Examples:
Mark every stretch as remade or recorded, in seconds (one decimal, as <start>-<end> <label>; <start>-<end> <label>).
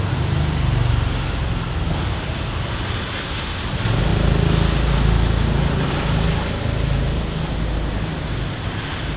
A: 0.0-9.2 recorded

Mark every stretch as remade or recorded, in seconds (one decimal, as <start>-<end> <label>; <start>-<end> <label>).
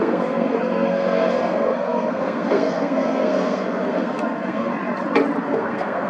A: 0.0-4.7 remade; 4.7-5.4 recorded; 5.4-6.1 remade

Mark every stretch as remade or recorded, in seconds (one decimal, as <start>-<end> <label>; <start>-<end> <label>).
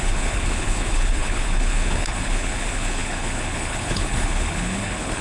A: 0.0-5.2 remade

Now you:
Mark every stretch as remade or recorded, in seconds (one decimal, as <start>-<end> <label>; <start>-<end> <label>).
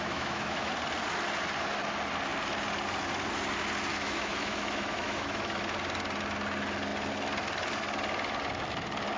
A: 0.0-0.7 remade; 0.7-3.9 recorded; 3.9-5.6 remade; 5.6-9.2 recorded